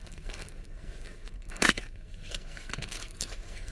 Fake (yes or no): yes